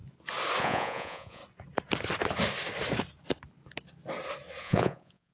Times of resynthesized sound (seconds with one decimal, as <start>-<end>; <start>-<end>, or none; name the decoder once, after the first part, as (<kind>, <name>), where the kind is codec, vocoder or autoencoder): 0.6-1.4 (vocoder, Vocos); 4.6-5.3